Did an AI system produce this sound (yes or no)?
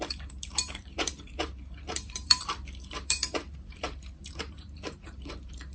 yes